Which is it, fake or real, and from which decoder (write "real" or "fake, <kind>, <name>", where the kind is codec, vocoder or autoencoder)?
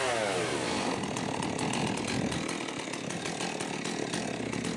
real